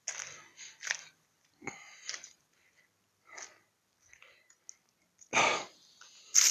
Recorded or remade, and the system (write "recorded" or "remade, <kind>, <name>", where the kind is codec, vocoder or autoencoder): recorded